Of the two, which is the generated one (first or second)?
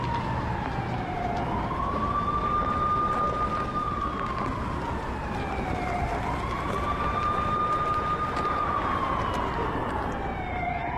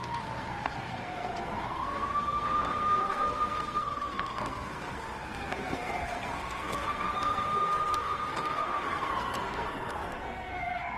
second